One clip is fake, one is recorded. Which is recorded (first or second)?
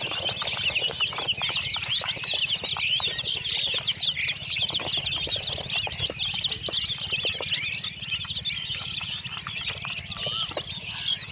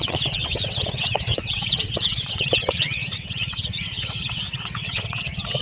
first